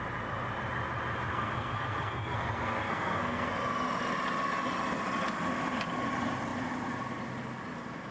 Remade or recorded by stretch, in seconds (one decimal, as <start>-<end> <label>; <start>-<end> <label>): 0.0-1.3 recorded; 1.3-3.5 remade; 3.5-8.1 recorded